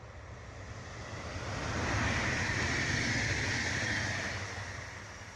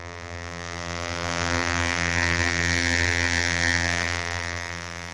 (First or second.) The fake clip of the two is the second